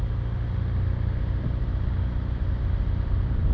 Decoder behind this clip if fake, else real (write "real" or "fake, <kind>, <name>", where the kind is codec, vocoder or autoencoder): real